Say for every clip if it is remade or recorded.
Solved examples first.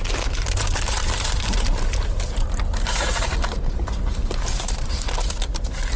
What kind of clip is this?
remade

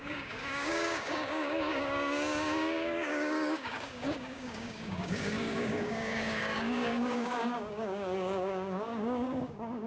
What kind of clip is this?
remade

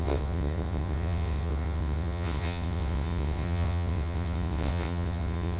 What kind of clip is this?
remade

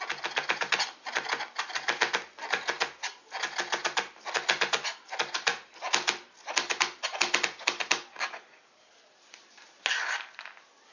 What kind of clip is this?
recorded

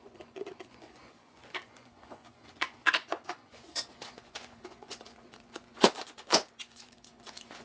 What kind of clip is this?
remade